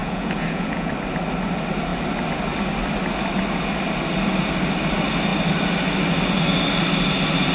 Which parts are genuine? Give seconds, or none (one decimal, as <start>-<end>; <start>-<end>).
0.9-7.5